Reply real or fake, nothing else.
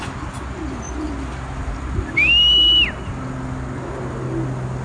real